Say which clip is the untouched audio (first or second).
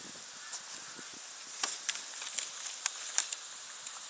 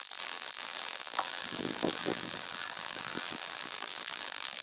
first